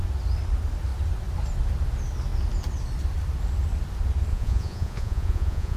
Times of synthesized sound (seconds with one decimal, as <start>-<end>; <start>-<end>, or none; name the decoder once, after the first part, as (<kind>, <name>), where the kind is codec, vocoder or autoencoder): 4.3-5.8 (vocoder, Vocos)